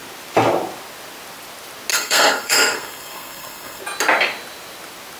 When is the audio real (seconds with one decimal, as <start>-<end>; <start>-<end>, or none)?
0.0-1.9; 3.8-5.2